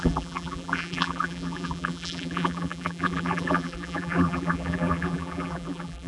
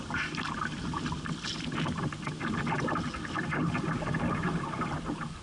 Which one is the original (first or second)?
second